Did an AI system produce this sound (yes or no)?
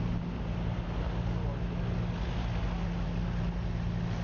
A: no